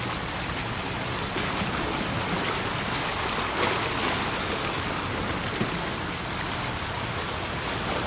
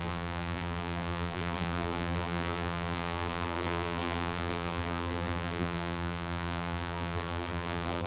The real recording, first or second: first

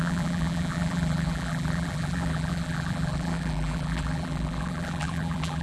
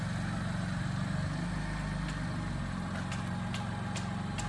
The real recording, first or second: second